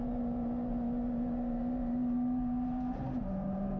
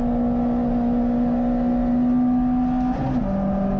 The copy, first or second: first